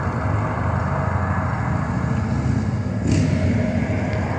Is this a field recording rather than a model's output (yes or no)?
yes